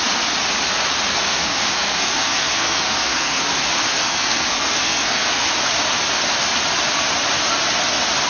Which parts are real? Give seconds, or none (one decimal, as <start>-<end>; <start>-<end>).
0.0-1.1; 3.5-4.0; 5.5-8.3